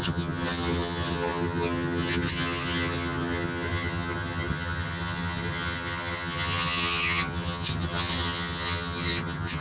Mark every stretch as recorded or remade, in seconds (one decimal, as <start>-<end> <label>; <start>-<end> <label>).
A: 0.0-9.6 remade